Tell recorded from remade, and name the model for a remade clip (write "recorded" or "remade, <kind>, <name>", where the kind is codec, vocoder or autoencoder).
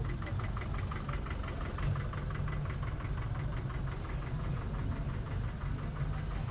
recorded